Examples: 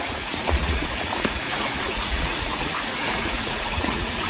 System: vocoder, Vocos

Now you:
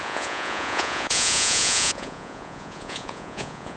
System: vocoder, Vocos